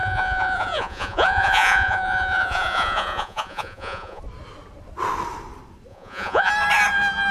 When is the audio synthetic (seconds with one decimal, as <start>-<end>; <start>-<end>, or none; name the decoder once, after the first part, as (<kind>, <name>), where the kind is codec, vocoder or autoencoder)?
0.0-4.2 (vocoder, Vocos); 5.9-6.5